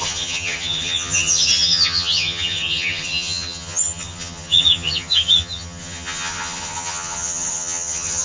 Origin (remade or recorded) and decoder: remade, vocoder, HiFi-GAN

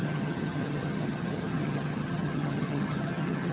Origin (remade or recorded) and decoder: remade, vocoder, HiFi-GAN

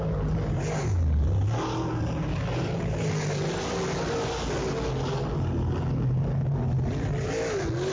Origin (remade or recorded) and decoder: recorded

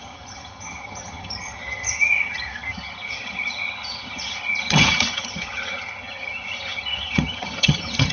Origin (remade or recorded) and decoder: remade, vocoder, HiFi-GAN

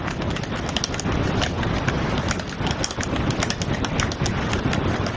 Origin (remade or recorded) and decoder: recorded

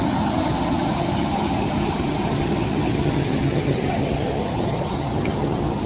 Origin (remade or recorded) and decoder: remade, vocoder, HiFi-GAN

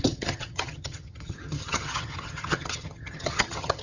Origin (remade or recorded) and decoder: remade, vocoder, HiFi-GAN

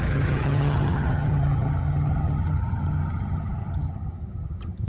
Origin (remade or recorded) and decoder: remade, vocoder, HiFi-GAN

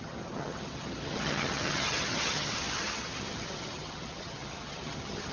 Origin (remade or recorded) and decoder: remade, vocoder, HiFi-GAN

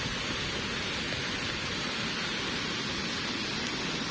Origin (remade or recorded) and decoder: recorded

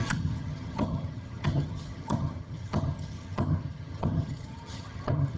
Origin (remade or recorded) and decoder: remade, vocoder, HiFi-GAN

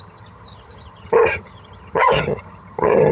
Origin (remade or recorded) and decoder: remade, vocoder, HiFi-GAN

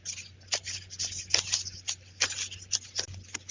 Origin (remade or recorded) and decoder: recorded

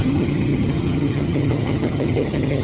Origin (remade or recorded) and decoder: remade, vocoder, HiFi-GAN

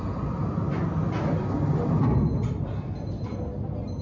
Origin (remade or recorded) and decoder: recorded